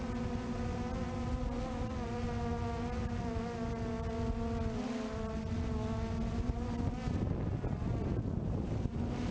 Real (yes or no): yes